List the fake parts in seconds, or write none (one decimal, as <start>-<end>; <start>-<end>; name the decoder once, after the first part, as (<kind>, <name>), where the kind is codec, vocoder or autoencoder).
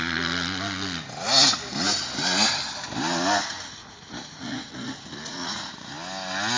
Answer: 3.8-5.9 (vocoder, Vocos)